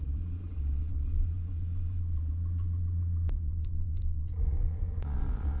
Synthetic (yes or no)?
yes